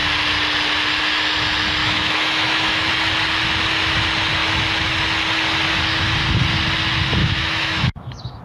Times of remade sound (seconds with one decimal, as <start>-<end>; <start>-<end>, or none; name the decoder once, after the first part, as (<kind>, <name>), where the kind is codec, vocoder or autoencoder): 1.8-2.9 (autoencoder, DAC-VAE); 7.2-8.4